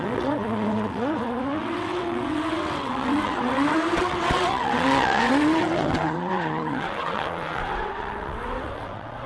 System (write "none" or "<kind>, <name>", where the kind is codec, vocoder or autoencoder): vocoder, WaveNeXt